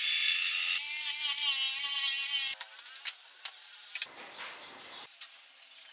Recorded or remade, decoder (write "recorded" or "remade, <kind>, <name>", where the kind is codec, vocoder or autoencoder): recorded